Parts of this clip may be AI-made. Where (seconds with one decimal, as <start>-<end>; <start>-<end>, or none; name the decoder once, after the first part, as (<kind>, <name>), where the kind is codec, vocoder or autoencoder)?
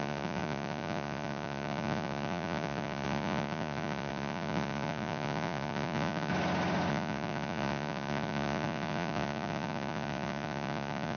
0.0-6.3 (vocoder, Vocos); 6.9-11.2